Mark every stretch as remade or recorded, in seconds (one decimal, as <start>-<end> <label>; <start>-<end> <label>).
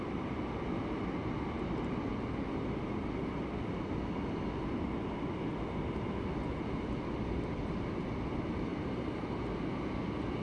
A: 0.0-8.7 recorded; 8.7-9.4 remade; 9.4-10.4 recorded